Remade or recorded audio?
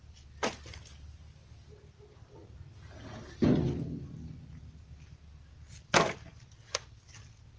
recorded